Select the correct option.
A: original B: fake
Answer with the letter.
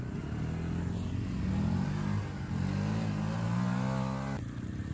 A